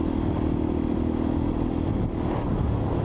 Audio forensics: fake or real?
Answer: real